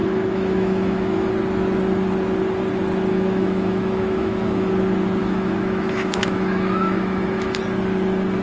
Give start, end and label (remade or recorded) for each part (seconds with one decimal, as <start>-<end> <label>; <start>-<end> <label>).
0.0-1.3 remade; 1.3-3.1 recorded; 3.1-4.7 remade; 4.7-5.2 recorded; 5.2-7.6 remade; 7.6-8.4 recorded